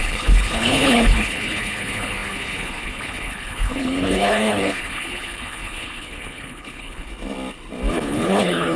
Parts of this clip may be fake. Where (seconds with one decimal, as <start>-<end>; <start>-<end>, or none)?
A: 0.0-7.1; 7.9-8.8